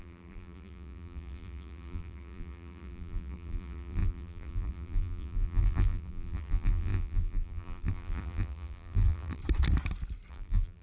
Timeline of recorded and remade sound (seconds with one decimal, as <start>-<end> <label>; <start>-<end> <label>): 0.0-9.4 remade; 9.4-10.3 recorded; 10.3-10.8 remade